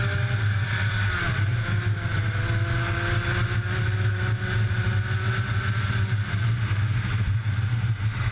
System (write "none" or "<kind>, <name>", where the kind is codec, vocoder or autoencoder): none